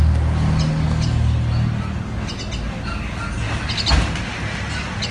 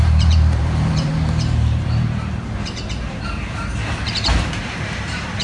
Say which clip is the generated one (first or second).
second